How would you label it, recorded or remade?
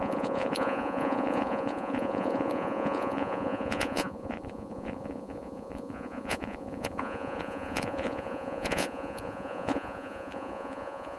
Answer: remade